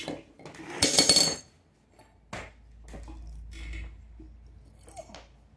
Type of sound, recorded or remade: recorded